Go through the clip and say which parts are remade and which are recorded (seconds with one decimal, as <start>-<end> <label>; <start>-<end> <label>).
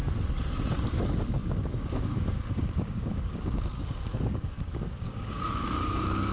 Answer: 0.0-0.9 recorded; 0.9-6.3 remade